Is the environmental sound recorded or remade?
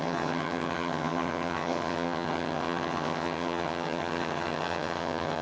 remade